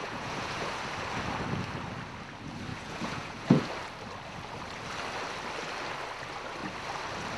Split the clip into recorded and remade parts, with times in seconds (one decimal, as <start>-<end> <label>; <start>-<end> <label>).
0.0-0.8 remade; 0.8-2.7 recorded; 2.7-3.7 remade; 3.7-7.4 recorded